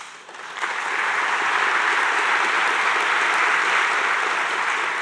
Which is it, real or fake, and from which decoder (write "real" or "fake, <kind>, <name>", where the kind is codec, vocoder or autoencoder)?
real